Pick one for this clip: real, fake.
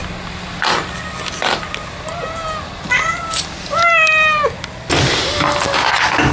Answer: real